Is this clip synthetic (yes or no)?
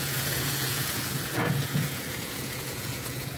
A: yes